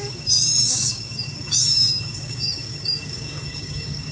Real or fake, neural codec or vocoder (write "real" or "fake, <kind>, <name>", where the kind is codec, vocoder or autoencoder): fake, codec, DAC